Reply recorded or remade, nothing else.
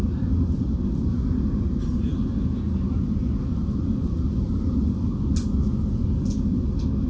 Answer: recorded